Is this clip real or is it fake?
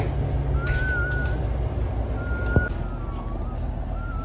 real